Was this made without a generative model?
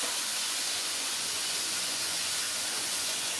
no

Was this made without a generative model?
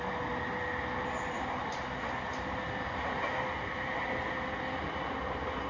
yes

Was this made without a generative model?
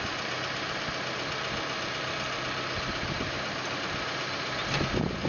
yes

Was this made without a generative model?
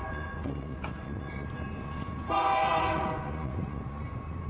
no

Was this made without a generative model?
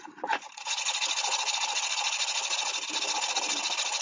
yes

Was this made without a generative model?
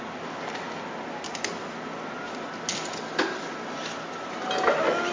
yes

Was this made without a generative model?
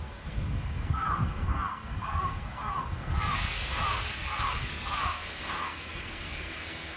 no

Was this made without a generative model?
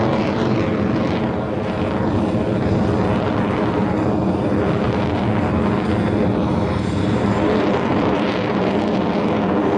yes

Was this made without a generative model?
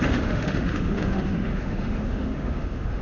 no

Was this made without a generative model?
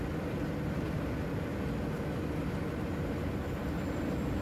yes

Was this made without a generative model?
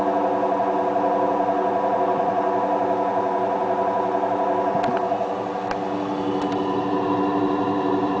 yes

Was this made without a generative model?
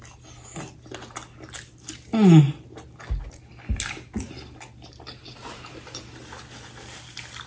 yes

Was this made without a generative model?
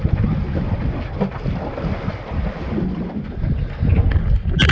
yes